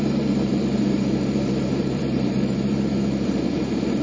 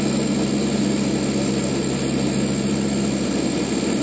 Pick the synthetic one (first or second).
first